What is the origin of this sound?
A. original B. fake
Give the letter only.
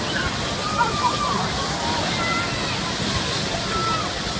A